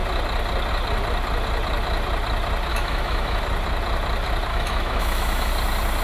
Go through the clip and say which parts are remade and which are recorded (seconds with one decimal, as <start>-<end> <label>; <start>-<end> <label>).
0.0-2.7 recorded; 2.7-3.4 remade; 3.4-4.5 recorded; 4.5-5.5 remade; 5.5-6.0 recorded